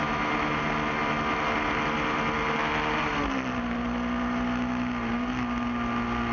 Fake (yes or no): no